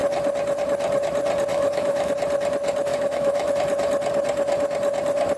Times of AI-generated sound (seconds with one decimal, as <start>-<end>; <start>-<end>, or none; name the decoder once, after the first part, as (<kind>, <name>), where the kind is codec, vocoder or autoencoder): 1.5-2.1 (autoencoder, DAC-VAE); 2.9-3.5